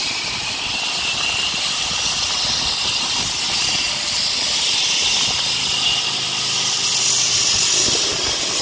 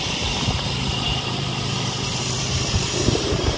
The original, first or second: first